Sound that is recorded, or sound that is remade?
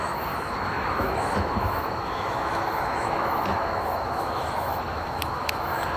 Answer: remade